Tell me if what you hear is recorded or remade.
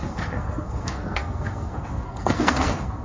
remade